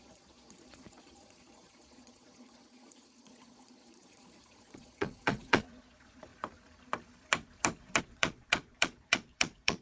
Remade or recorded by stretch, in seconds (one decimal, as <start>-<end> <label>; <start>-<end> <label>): 0.0-6.3 remade; 6.3-8.0 recorded; 8.0-9.8 remade